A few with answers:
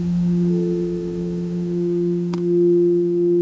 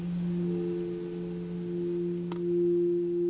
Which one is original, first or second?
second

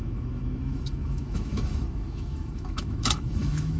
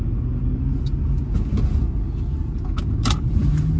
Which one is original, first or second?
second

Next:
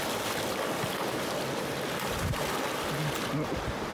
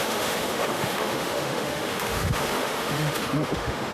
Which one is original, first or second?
first